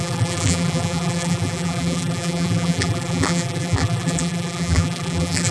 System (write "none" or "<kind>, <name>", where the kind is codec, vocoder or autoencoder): vocoder, BigVGAN v2